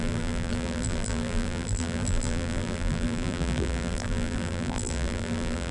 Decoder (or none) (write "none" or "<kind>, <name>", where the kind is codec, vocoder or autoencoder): vocoder, BigVGAN v2